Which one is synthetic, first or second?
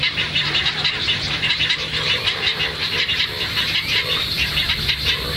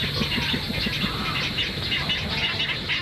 first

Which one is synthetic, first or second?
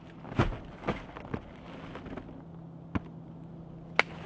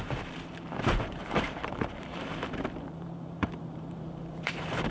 second